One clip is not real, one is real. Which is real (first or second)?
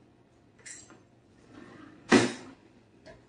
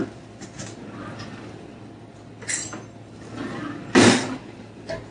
second